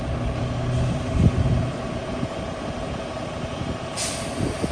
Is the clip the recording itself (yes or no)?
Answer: yes